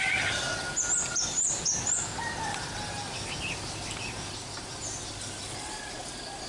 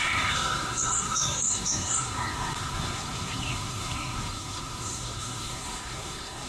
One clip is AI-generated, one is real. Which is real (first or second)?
first